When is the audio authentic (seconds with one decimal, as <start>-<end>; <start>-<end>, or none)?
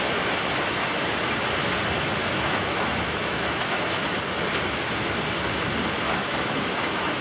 0.0-2.2; 4.2-6.2